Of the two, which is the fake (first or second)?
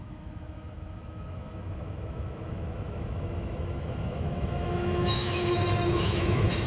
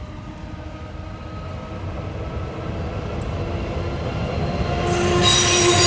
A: first